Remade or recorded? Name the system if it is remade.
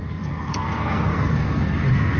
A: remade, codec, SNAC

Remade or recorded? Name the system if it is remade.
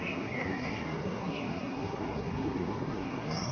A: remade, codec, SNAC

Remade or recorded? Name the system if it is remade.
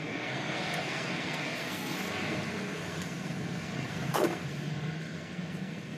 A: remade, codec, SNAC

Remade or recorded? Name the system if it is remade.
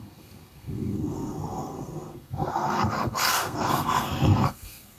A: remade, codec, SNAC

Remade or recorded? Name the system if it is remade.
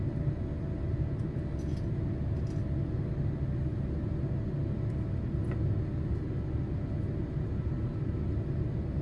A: recorded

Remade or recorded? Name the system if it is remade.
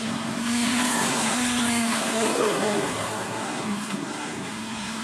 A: remade, codec, SNAC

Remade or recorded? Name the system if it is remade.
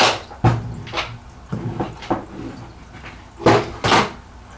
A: recorded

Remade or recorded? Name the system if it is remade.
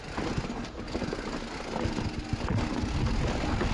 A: recorded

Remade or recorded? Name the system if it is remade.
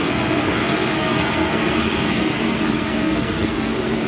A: remade, codec, SNAC